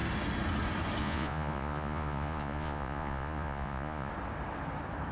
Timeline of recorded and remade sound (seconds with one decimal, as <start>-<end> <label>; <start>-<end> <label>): 0.0-1.0 recorded; 1.0-4.1 remade; 4.1-5.1 recorded